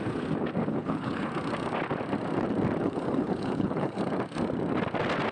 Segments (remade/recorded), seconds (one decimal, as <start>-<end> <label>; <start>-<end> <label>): 0.0-0.7 recorded; 0.7-1.3 remade; 1.3-2.8 recorded; 2.8-4.0 remade; 4.0-5.3 recorded